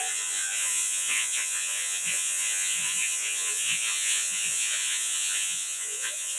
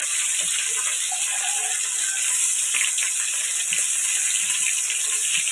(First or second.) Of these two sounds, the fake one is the first